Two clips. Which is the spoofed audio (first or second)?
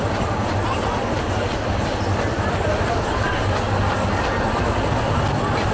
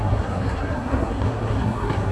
second